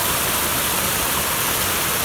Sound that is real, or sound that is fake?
real